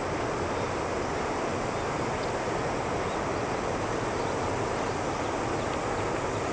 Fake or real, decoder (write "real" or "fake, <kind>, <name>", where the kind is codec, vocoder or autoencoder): real